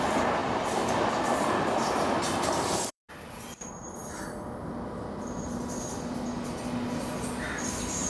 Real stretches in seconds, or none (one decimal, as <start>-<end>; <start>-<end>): 0.0-0.4; 3.1-8.1